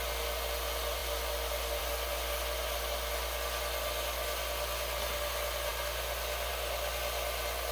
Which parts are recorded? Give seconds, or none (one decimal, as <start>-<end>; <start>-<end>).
0.0-7.7